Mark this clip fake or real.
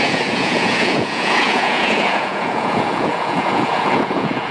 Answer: fake